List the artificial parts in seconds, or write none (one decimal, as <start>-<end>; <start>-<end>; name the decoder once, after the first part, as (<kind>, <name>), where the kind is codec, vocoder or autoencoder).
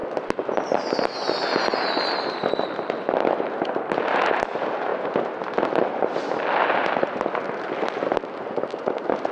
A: none